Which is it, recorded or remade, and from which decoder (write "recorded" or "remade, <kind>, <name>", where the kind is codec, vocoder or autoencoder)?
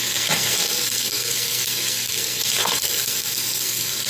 remade, codec, SNAC